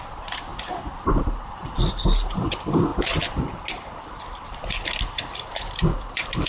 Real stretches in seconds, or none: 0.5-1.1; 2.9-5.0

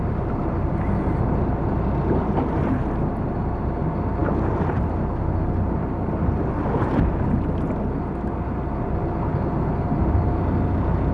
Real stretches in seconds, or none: 0.0-11.1

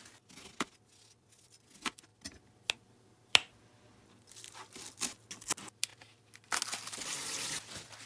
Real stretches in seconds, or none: 0.0-8.1

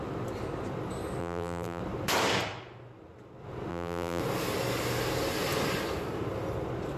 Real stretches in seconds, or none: 0.0-1.2; 1.8-3.7; 4.2-7.0